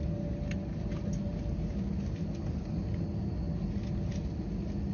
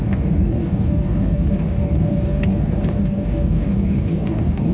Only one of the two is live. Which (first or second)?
first